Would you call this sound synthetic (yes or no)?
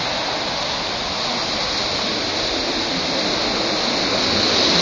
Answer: no